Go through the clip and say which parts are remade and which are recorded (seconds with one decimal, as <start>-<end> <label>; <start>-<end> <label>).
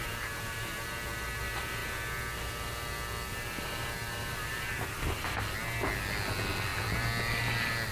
0.0-7.9 recorded